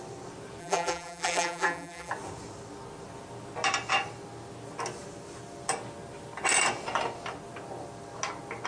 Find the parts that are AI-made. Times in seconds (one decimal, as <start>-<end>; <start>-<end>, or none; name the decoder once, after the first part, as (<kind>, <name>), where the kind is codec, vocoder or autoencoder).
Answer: 0.6-2.1 (vocoder, BigVGAN v2)